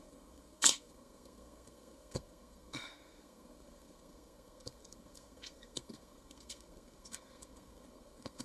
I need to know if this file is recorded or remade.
remade